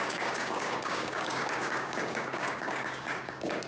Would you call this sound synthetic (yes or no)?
yes